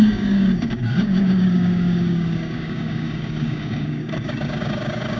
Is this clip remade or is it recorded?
remade